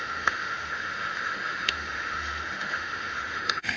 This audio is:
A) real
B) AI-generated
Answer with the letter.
B